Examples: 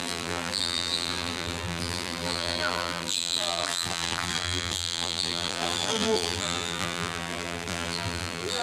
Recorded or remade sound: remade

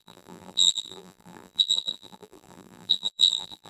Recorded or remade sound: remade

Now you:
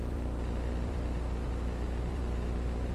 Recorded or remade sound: remade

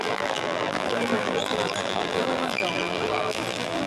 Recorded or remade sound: remade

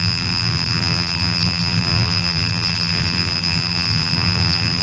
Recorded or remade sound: remade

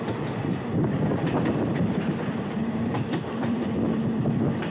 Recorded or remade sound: remade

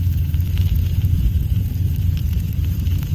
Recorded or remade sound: remade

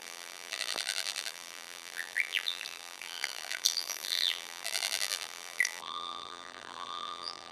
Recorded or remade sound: remade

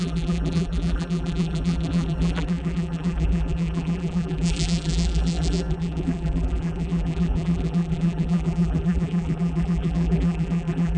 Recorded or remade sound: remade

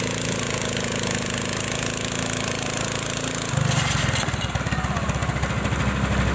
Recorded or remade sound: recorded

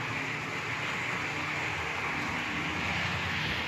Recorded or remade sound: recorded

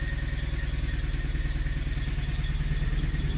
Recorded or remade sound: recorded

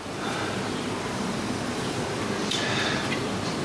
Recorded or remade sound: remade